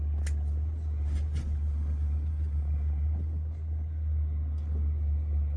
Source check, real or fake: real